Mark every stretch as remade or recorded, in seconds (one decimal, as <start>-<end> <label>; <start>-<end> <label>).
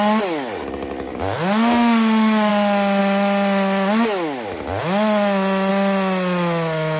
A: 0.0-1.1 recorded; 1.1-2.5 remade; 2.5-7.0 recorded